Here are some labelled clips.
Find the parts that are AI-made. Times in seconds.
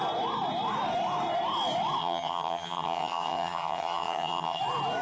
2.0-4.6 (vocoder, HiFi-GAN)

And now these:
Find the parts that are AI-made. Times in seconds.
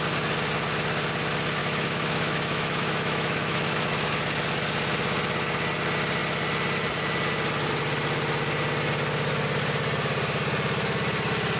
1.6-4.1 (autoencoder, DAC-VAE)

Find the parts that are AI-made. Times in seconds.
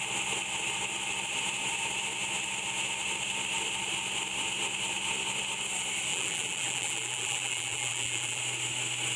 6.1-8.4 (vocoder, BigVGAN v2)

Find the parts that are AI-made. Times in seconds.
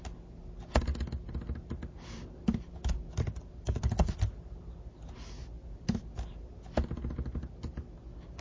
none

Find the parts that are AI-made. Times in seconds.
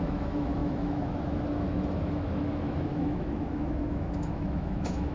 0.0-5.1 (autoencoder, DAC-VAE)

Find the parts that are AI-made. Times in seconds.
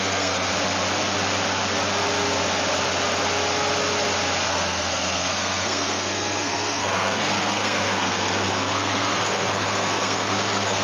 0.0-0.5 (codec, SNAC); 4.5-10.8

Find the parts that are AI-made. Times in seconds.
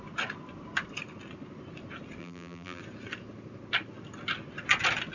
2.2-2.8 (vocoder, BigVGAN v2)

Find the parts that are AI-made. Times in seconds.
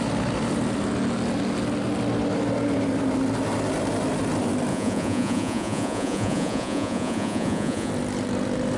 4.7-7.9 (vocoder, Vocos)